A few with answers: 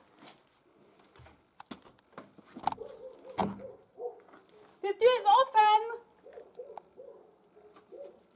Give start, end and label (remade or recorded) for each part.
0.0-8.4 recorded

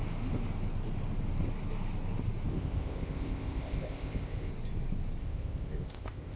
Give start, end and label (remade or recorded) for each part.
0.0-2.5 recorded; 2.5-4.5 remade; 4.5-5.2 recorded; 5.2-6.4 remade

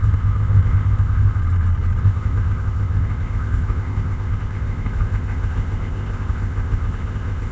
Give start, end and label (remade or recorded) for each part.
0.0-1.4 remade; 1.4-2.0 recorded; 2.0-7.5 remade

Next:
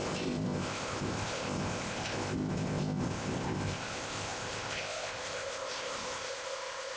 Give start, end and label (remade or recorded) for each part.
0.0-7.0 remade